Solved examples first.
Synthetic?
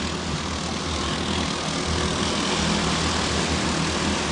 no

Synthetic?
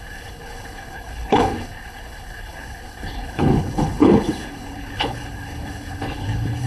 yes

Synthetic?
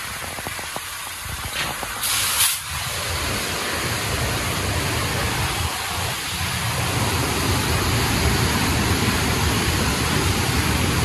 yes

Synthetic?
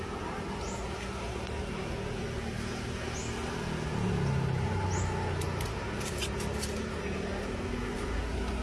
no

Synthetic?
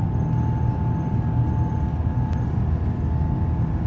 no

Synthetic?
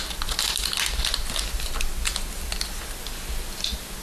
no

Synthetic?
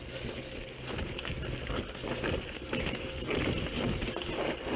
no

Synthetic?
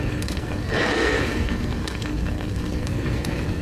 yes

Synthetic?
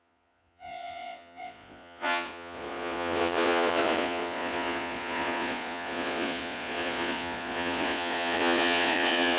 yes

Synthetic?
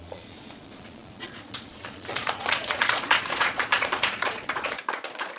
yes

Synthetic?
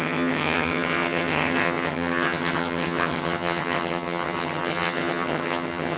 yes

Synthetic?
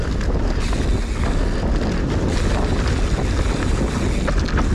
no